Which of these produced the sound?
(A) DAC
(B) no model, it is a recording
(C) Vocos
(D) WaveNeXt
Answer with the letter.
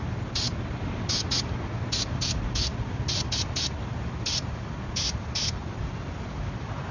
B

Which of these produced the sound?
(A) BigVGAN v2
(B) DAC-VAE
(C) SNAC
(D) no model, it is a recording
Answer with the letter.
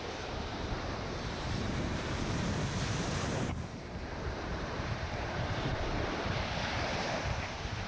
A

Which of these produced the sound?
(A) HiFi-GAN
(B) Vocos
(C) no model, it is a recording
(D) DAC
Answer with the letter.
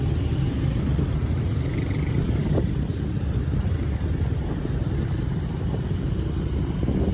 C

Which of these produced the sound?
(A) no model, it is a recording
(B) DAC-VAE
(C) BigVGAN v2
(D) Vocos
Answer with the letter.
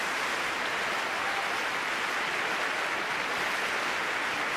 A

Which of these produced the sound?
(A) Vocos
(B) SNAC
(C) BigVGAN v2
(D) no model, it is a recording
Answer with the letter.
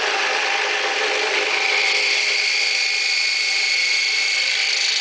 D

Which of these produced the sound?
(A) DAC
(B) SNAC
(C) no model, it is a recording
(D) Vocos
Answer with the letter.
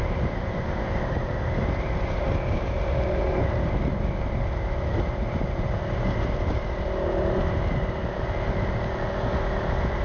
C